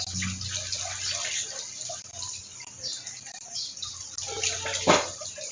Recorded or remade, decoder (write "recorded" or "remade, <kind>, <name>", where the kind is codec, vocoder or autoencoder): recorded